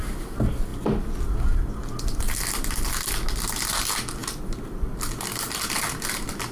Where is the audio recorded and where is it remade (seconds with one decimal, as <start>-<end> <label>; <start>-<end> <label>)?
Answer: 0.0-6.5 recorded